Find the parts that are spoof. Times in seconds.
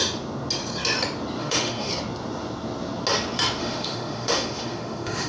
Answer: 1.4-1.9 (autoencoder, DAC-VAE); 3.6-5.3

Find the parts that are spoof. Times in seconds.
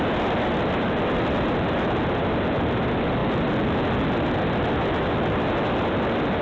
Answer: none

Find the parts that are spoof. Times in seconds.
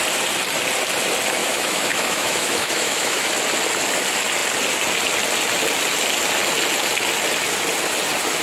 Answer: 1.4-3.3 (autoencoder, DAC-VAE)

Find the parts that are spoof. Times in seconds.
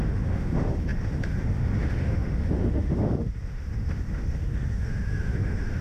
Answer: 0.0-5.8 (autoencoder, DAC-VAE)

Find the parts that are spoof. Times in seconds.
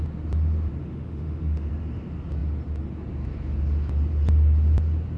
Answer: 0.8-1.7 (autoencoder, DAC-VAE)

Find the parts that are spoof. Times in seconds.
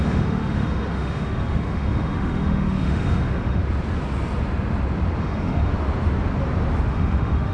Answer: 0.0-3.6 (autoencoder, DAC-VAE); 5.2-5.7; 6.9-7.5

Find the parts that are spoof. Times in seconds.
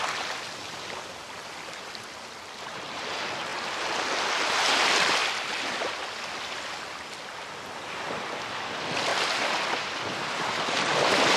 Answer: none